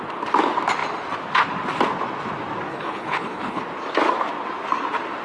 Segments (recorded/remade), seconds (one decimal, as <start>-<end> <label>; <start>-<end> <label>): 0.0-2.7 recorded; 2.7-3.6 remade; 3.6-5.2 recorded